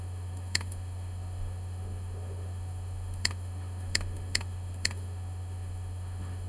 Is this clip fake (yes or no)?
yes